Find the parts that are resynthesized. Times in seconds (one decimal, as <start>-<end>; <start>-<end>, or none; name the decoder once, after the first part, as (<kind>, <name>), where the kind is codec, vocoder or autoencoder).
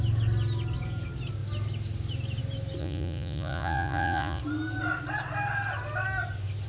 2.8-4.4 (vocoder, Vocos)